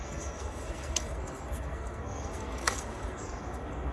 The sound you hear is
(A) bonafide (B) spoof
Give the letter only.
B